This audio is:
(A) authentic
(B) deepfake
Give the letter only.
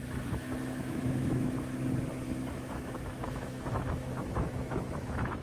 B